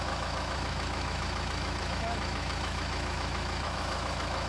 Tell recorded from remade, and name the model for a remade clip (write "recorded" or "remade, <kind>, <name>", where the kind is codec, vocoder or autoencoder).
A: remade, autoencoder, DAC-VAE